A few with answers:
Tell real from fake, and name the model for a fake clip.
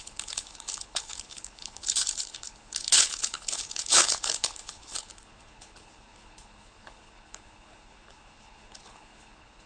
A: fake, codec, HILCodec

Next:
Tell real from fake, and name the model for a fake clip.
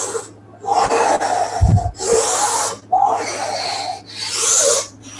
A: real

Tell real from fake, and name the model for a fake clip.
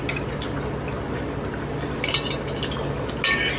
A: real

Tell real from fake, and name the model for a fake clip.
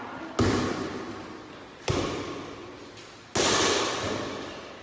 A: real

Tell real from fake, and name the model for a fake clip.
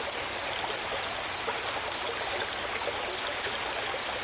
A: real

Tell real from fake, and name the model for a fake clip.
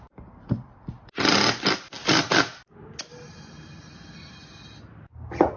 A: real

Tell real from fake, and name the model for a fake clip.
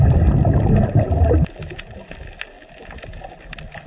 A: real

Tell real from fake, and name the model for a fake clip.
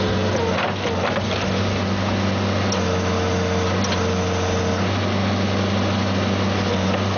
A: real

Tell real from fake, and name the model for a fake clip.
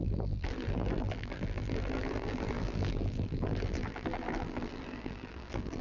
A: fake, vocoder, BigVGAN v2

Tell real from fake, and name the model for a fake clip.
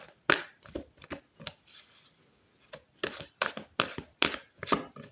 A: real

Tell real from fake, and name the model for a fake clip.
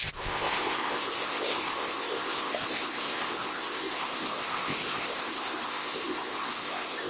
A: fake, codec, ZipCodec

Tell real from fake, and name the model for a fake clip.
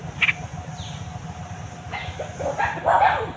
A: real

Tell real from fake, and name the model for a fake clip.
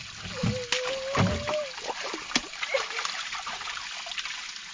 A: real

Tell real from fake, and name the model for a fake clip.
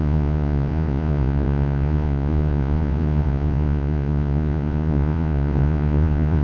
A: fake, vocoder, Vocos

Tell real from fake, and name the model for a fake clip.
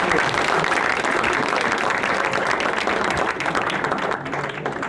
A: real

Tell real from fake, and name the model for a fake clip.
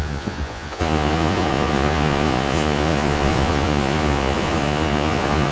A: fake, vocoder, Vocos